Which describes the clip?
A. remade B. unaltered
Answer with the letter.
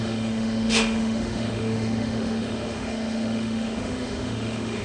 A